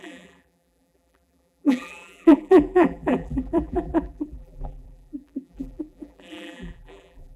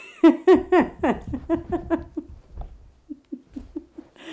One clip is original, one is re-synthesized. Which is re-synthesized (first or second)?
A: first